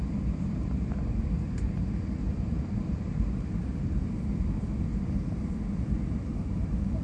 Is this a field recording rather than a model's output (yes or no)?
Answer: no